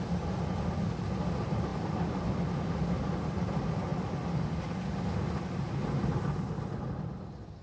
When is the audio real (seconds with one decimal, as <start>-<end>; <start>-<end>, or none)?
0.0-7.6